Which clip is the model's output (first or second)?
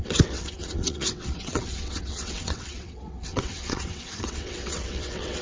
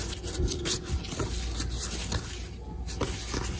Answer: first